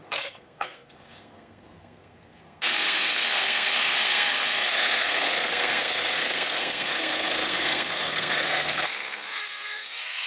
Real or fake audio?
fake